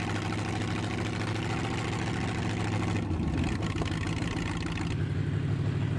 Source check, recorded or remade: recorded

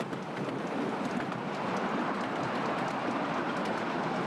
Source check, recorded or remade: recorded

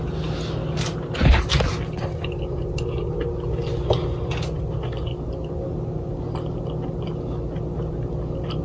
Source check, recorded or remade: recorded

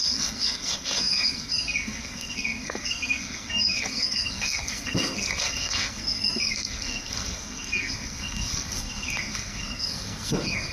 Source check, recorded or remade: remade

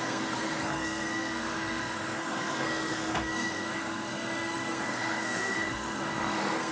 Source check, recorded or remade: remade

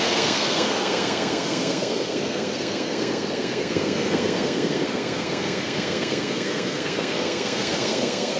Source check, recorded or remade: remade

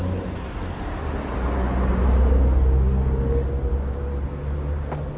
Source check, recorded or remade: recorded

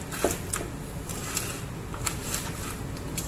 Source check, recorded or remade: recorded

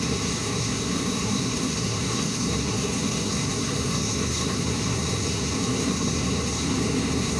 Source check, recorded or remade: remade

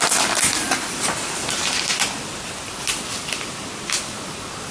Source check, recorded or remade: recorded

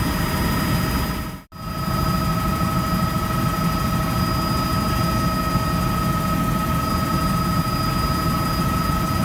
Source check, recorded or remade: recorded